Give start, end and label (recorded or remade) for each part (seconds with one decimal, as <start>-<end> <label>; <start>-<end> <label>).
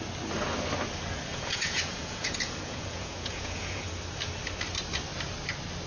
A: 0.0-1.3 recorded; 1.3-3.9 remade; 3.9-5.9 recorded